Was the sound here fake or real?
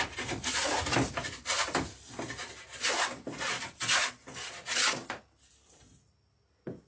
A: real